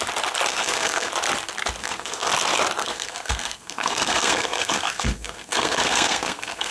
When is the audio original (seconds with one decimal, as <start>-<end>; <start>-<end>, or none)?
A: 0.0-0.5; 1.1-1.8; 2.3-2.8